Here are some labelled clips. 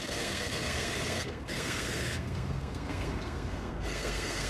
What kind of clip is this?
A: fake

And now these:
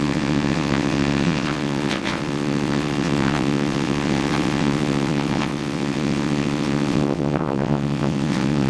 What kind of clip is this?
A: fake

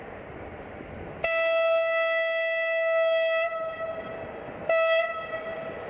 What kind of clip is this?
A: real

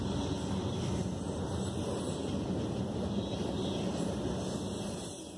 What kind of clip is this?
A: real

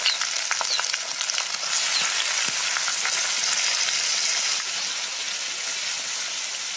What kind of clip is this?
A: real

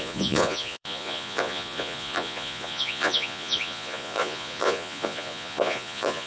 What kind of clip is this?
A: fake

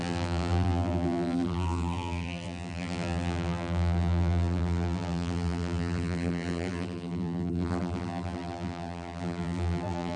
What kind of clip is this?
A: fake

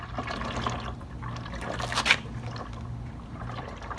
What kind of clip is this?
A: real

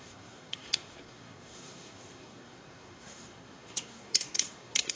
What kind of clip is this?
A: fake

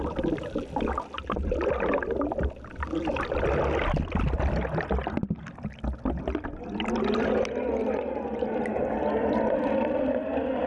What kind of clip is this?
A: real